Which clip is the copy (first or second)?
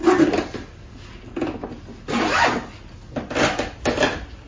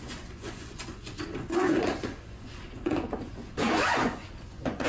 second